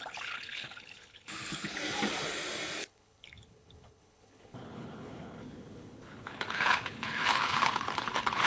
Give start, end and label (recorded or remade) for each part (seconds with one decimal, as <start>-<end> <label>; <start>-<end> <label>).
0.0-1.8 remade; 1.8-2.8 recorded; 2.8-8.5 remade